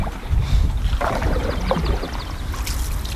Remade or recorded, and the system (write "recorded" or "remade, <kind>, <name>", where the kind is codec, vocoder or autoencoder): recorded